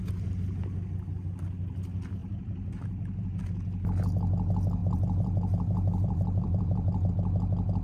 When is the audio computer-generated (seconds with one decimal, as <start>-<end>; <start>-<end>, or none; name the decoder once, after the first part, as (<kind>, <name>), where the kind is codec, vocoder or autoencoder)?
2.2-3.4 (vocoder, BigVGAN v2); 4.8-7.1